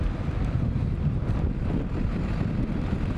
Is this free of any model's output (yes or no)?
yes